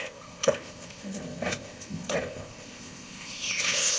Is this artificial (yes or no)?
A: yes